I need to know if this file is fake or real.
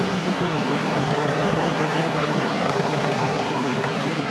fake